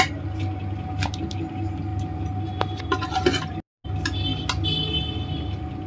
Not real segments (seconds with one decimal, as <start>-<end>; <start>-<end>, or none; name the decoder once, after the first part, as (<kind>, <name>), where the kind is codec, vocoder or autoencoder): none